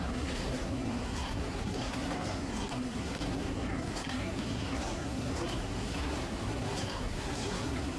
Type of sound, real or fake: fake